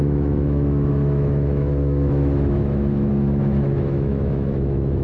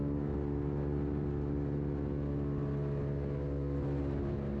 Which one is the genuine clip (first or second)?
second